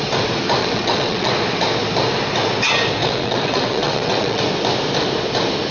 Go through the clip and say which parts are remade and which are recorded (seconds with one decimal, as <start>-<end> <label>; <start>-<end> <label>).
0.0-0.6 recorded; 0.6-1.3 remade; 1.3-3.0 recorded; 3.0-4.4 remade; 4.4-5.7 recorded